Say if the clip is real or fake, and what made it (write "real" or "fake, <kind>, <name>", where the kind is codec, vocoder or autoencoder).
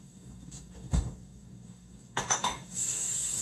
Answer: fake, codec, DAC